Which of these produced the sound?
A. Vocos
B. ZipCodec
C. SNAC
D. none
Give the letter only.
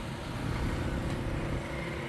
D